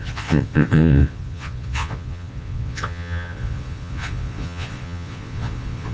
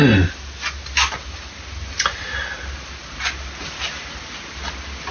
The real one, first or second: second